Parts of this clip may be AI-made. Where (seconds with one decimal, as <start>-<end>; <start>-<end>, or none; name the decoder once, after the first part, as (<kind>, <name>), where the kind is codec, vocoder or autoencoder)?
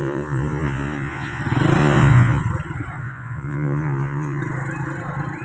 0.0-1.4 (vocoder, Vocos); 1.8-2.4; 3.0-4.4